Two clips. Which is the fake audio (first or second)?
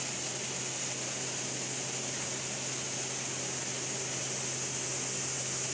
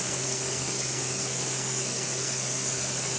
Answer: second